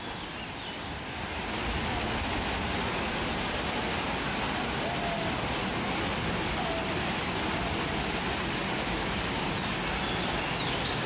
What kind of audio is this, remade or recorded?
recorded